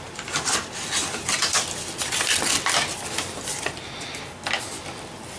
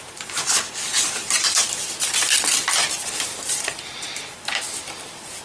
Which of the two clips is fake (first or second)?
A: second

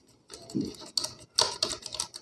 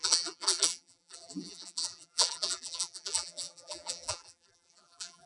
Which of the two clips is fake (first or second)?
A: second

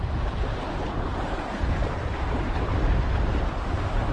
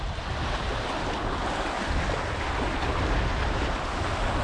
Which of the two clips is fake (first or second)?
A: first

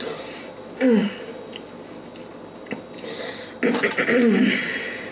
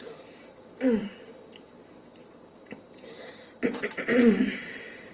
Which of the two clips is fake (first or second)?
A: second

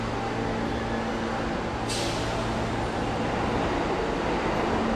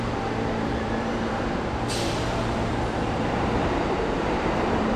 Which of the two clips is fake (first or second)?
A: second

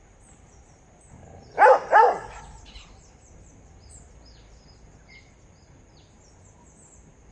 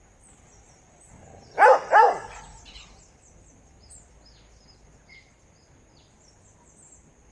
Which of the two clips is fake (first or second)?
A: first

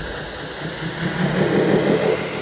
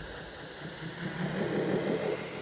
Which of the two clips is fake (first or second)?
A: second